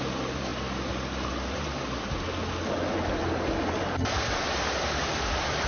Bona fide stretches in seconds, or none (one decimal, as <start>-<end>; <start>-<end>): 0.5-3.8